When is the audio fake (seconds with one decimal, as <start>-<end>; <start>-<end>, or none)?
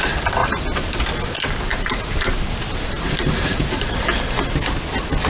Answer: 0.4-1.0; 1.7-4.6